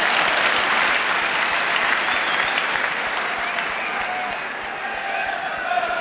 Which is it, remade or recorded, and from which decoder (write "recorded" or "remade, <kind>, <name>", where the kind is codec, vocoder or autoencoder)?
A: recorded